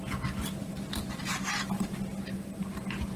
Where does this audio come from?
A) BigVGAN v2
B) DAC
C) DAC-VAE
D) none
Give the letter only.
D